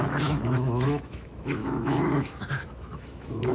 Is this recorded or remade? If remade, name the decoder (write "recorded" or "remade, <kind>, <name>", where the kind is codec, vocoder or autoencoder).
remade, autoencoder, DAC-VAE